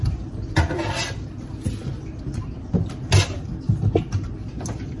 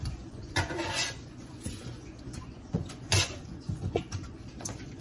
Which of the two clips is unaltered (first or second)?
first